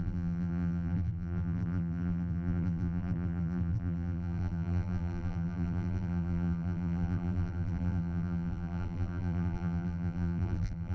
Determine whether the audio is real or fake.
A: fake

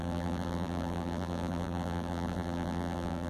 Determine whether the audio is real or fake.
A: fake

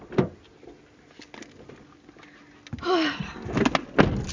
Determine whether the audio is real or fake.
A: real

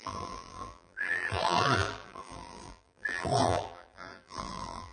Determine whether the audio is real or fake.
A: fake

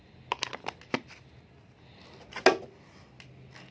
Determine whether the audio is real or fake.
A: real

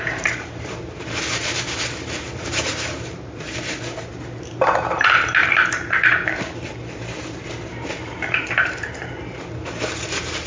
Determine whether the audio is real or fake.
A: fake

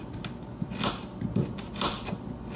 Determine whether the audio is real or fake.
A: real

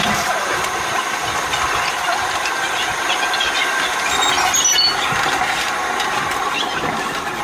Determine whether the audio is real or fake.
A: real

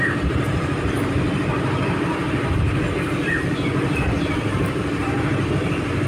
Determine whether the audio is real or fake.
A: fake